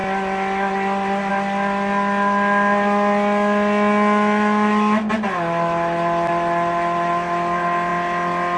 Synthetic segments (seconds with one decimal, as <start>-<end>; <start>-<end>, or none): none